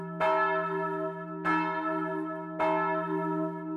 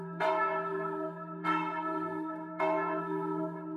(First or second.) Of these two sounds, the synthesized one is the second